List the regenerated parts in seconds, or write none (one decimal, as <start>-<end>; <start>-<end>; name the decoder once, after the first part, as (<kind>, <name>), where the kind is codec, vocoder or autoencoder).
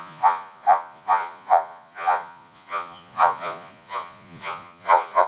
0.0-5.3 (vocoder, Vocos)